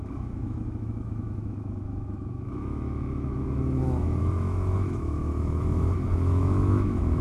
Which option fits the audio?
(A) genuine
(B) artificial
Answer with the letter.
B